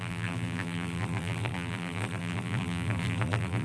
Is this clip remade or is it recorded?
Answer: remade